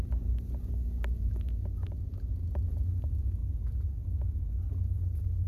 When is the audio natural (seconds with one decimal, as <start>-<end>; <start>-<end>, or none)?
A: 0.0-5.5

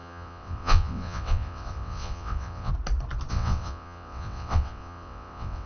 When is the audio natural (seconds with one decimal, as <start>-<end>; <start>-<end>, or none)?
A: 2.7-3.3

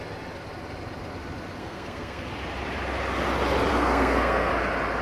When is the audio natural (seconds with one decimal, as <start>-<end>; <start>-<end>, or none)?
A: 0.0-1.6; 2.3-3.7; 4.5-5.0